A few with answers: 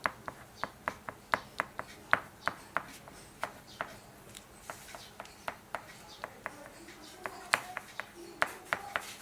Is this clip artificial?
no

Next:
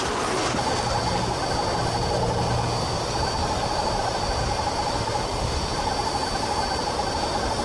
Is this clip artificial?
no